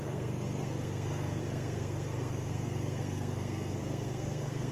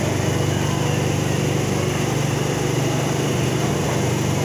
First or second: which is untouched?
second